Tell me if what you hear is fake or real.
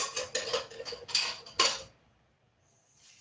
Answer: real